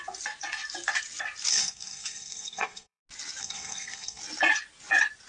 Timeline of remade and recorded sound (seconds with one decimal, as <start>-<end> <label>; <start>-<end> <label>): 0.0-1.5 recorded; 1.5-3.0 remade; 3.0-3.4 recorded; 3.4-4.2 remade; 4.2-5.3 recorded